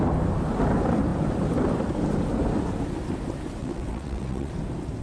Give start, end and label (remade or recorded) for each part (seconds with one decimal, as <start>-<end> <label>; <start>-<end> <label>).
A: 0.0-3.6 recorded; 3.6-4.5 remade; 4.5-5.0 recorded